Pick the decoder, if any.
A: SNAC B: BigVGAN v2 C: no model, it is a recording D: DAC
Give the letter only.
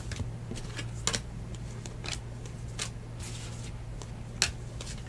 C